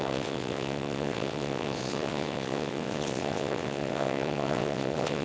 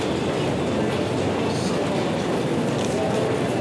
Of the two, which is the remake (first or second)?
first